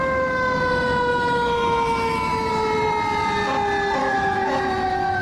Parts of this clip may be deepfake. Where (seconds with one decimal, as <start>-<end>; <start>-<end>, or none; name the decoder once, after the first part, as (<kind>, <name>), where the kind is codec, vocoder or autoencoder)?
1.1-2.5 (autoencoder, DAC-VAE); 4.0-5.2